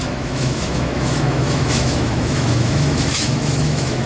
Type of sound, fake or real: fake